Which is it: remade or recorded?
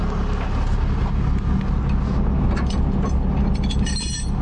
recorded